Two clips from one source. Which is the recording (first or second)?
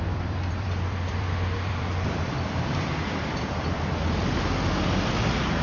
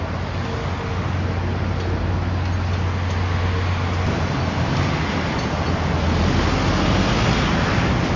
second